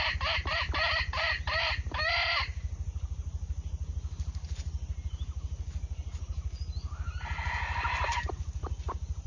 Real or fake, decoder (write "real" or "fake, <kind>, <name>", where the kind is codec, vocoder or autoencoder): real